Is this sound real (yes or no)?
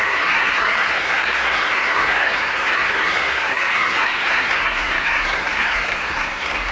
no